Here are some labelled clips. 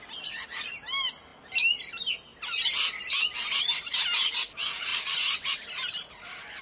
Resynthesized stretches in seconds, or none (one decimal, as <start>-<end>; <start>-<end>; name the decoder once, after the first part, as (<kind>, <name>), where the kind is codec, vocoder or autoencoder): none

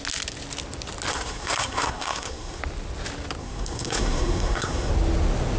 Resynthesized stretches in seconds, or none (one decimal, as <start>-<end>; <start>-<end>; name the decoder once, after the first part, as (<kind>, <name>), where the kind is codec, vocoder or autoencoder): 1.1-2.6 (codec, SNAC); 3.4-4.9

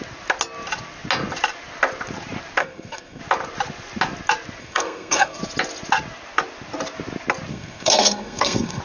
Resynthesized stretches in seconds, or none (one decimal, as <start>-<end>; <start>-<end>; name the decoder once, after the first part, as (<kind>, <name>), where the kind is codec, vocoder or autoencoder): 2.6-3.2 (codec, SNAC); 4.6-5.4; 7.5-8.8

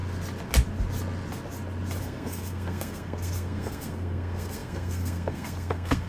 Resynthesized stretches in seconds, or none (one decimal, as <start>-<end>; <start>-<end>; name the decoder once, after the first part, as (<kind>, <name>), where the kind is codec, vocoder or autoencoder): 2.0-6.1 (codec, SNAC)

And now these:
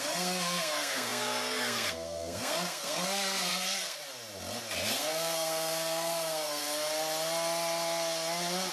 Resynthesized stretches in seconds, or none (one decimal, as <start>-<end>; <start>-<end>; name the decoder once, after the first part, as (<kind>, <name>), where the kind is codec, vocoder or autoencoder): 0.0-4.0 (codec, SNAC); 4.9-6.6

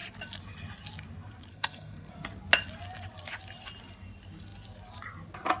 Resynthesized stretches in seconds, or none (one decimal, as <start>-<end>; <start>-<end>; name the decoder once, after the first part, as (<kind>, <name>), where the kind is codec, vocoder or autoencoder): 1.5-2.1 (codec, SNAC)